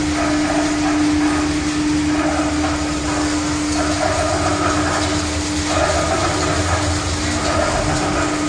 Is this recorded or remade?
recorded